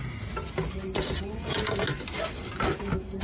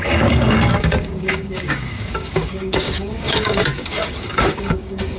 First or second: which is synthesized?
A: second